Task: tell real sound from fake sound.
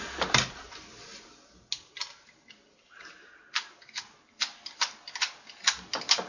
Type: real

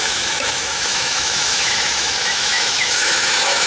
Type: fake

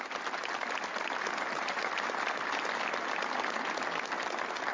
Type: real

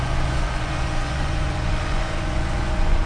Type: fake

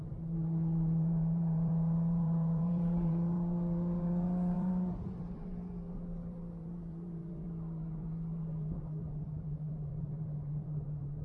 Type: fake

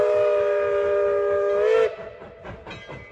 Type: real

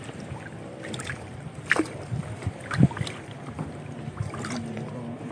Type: fake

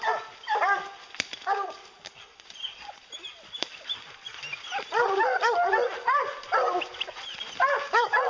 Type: real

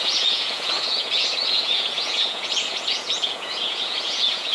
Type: fake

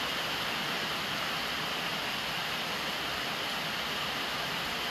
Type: real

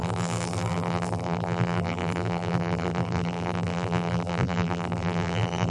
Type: fake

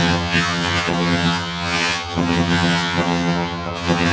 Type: fake